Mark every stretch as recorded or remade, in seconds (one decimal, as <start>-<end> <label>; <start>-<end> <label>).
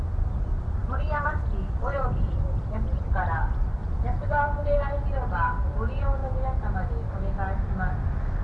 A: 0.0-0.8 recorded; 0.8-2.6 remade; 2.6-3.8 recorded; 3.8-4.4 remade; 4.4-8.4 recorded